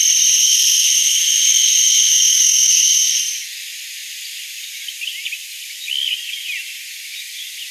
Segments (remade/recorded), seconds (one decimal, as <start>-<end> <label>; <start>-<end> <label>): 0.0-0.4 recorded; 0.4-3.2 remade; 3.2-7.7 recorded